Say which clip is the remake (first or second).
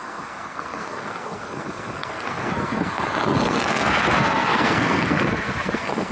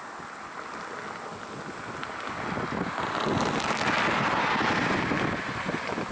first